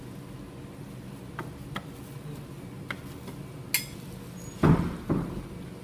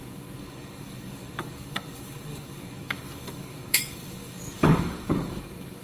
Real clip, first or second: first